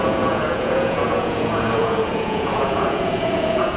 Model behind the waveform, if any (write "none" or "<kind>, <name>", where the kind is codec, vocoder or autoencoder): vocoder, Vocos